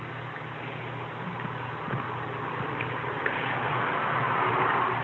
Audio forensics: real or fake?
real